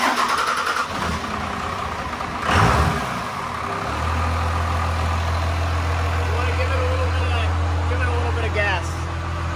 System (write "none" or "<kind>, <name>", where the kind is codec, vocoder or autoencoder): none